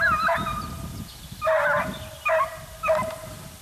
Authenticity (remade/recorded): recorded